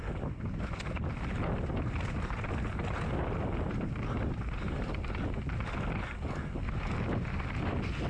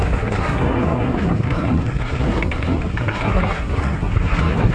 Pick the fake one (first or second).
second